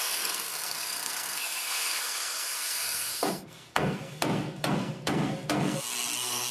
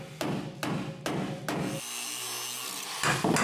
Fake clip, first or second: first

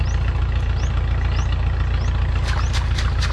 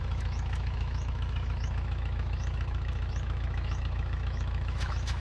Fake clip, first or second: second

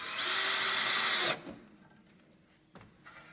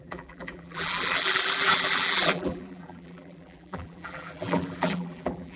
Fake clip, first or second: second